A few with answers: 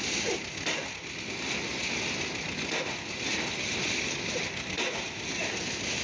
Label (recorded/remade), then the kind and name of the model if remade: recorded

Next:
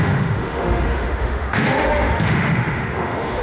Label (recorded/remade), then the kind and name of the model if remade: remade, autoencoder, DAC-VAE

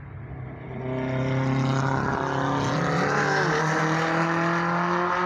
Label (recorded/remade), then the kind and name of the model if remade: recorded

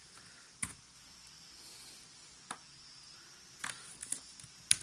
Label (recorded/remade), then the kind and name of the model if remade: recorded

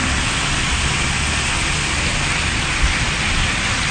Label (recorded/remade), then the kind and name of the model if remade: recorded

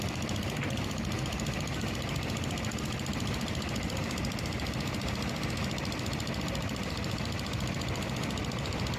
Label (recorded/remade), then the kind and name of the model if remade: recorded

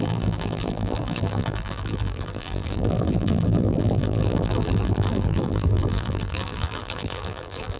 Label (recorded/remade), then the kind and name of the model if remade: remade, vocoder, BigVGAN v2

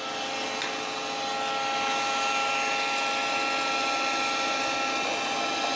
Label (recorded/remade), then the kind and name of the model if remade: recorded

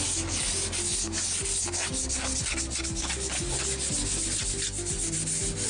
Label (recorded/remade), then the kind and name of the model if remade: recorded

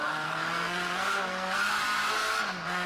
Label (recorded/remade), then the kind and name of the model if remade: remade, codec, SNAC